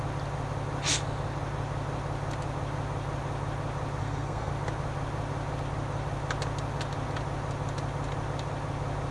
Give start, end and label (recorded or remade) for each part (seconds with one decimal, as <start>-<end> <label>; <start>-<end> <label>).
0.0-4.0 recorded; 4.0-4.5 remade; 4.5-9.1 recorded